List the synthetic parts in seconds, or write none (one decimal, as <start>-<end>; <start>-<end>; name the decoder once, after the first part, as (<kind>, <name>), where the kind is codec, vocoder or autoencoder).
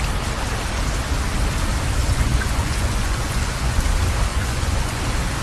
2.0-3.8 (vocoder, Vocos); 4.3-5.0